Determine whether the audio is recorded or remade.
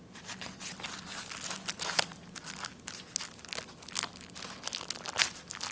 recorded